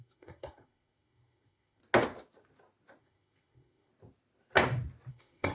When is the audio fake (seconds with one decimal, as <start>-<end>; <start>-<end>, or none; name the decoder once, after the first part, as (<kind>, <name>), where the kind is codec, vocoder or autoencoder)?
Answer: 0.0-1.8 (codec, SNAC); 3.0-3.9; 5.1-5.5